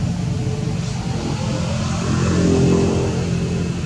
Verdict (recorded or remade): recorded